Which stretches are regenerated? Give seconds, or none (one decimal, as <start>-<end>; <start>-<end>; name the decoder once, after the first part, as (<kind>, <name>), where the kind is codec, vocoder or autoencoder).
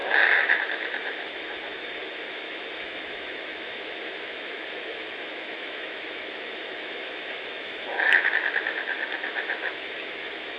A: 0.6-10.6 (autoencoder, DAC-VAE)